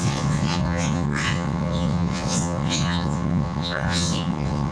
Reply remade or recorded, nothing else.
remade